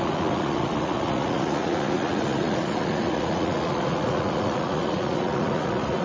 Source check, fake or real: fake